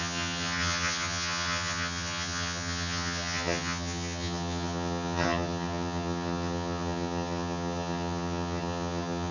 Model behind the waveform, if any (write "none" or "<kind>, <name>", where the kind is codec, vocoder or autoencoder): vocoder, HiFi-GAN